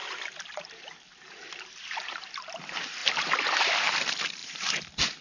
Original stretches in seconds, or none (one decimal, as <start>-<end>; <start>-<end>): 0.0-0.5; 3.0-3.6; 4.4-5.2